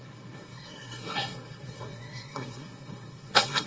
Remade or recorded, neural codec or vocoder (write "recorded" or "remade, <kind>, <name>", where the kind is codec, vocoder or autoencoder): remade, codec, SNAC